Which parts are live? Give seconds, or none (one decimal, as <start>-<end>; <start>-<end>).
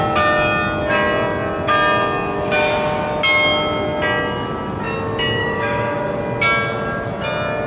0.0-5.4; 6.2-7.7